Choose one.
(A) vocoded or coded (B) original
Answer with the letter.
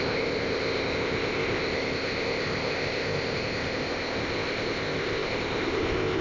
A